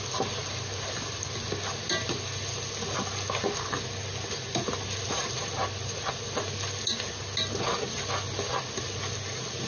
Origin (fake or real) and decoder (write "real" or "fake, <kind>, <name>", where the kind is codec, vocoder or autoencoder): real